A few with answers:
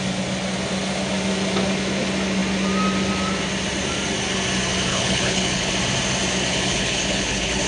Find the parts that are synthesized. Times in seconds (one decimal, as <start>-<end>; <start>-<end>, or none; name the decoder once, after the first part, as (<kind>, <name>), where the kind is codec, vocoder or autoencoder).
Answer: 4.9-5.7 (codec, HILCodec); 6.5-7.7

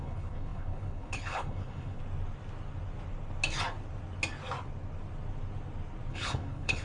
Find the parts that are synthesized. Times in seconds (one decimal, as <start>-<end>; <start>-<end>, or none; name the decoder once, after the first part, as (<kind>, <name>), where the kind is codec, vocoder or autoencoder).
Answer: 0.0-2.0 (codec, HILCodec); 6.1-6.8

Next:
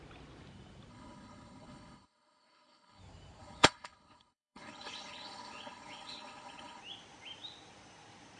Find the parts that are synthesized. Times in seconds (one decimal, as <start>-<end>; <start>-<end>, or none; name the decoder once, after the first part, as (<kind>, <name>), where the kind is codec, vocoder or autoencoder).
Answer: 0.9-3.0 (codec, HILCodec); 3.4-6.8

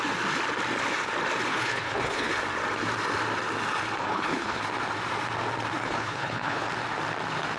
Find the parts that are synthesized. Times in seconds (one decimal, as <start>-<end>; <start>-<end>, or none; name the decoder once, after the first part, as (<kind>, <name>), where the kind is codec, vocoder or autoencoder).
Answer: 1.5-2.3 (codec, HILCodec); 4.0-4.6; 5.8-6.7

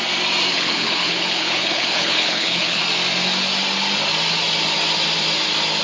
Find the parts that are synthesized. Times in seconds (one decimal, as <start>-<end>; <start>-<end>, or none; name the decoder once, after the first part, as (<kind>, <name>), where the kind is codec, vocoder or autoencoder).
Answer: 0.5-2.8 (codec, HILCodec)

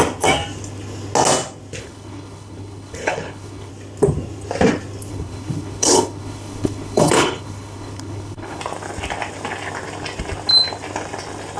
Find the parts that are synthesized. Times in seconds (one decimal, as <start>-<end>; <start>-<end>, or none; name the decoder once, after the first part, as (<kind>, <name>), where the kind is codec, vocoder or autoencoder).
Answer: 1.8-3.7 (codec, HILCodec); 5.1-8.6